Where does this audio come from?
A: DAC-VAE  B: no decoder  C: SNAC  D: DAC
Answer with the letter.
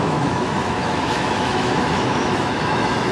A